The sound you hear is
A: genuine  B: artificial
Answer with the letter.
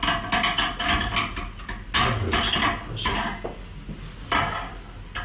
A